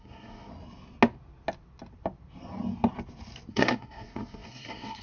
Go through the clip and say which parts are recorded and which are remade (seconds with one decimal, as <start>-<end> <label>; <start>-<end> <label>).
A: 0.0-0.5 remade; 0.5-3.5 recorded; 3.5-5.0 remade